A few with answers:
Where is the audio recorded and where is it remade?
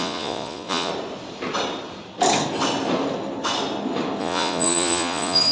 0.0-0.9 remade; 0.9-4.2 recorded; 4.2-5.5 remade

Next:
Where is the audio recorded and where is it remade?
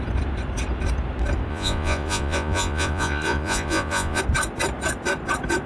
0.0-1.5 recorded; 1.5-4.2 remade; 4.2-5.7 recorded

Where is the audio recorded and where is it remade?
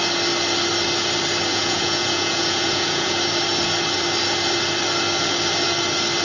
0.0-1.5 recorded; 1.5-3.2 remade; 3.2-6.2 recorded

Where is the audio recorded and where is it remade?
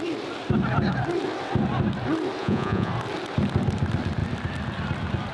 0.0-2.4 recorded; 2.4-2.9 remade; 2.9-5.3 recorded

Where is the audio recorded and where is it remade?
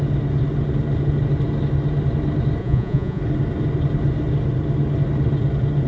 0.0-2.6 recorded; 2.6-3.2 remade; 3.2-5.9 recorded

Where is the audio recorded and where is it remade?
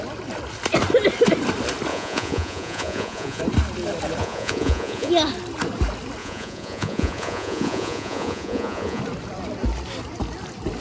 0.0-1.9 recorded; 1.9-3.4 remade; 3.4-4.2 recorded; 4.2-5.1 remade; 5.1-6.2 recorded; 6.2-9.0 remade; 9.0-10.8 recorded